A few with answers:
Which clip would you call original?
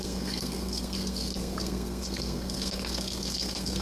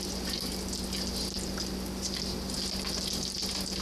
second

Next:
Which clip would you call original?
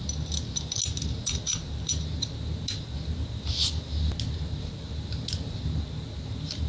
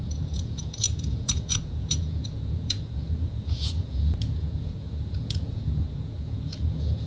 first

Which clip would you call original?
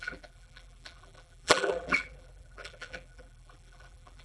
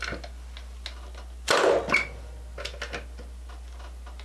second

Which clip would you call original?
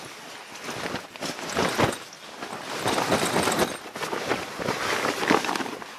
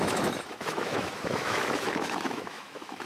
first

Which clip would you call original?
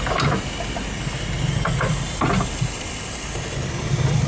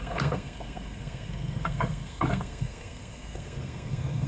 first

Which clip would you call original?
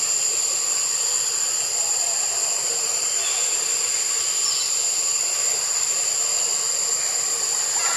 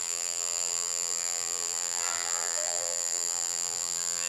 first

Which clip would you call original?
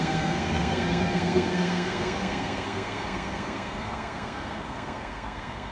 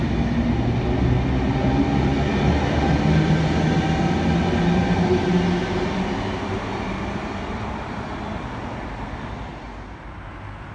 second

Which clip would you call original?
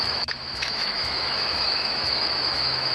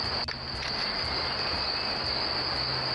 second